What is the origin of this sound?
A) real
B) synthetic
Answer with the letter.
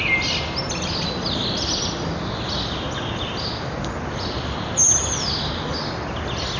A